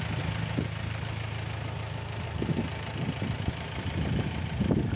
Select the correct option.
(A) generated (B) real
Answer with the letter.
B